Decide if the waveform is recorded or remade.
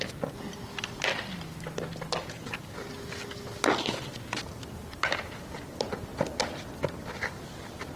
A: recorded